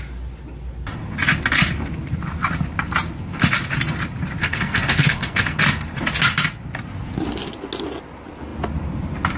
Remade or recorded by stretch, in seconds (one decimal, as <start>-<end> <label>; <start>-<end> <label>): 0.0-4.4 recorded; 4.4-5.6 remade; 5.6-9.4 recorded